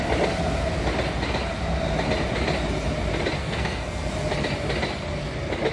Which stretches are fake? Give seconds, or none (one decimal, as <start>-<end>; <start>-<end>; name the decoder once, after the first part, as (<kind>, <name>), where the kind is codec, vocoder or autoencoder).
3.4-4.1 (codec, SNAC)